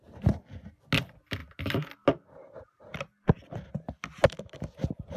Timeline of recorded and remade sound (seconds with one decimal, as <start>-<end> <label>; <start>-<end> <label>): 0.0-5.2 recorded